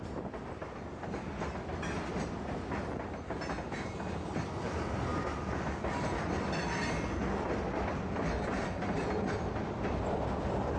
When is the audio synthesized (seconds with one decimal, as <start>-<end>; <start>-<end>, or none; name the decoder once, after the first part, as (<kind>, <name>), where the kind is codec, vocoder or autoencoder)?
none

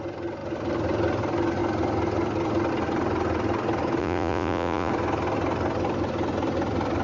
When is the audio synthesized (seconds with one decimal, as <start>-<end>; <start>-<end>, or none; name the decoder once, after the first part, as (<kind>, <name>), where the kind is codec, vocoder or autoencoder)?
4.0-4.9 (vocoder, Vocos)

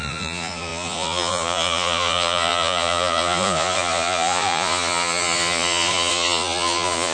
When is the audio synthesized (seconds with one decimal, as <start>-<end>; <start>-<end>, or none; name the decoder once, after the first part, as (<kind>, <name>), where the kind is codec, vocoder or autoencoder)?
0.0-7.1 (vocoder, Vocos)